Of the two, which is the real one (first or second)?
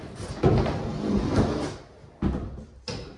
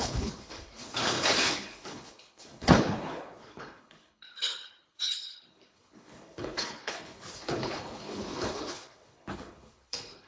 first